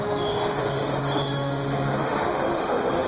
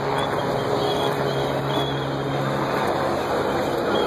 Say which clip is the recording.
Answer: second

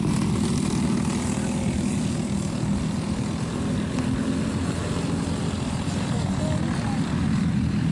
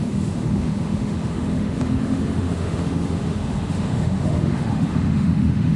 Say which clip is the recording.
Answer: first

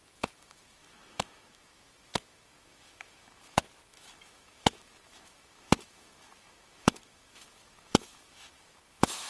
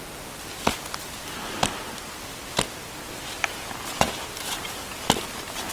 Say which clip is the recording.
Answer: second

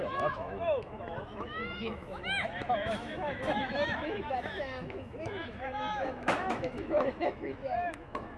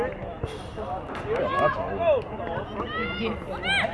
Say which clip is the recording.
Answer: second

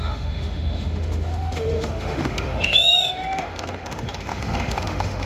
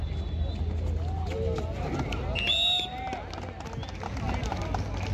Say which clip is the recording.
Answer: second